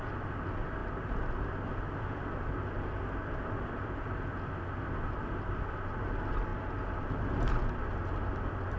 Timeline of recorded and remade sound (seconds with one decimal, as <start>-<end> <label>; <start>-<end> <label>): 0.0-8.8 recorded